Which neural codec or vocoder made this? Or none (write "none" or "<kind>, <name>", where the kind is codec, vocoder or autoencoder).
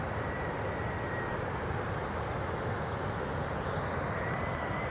none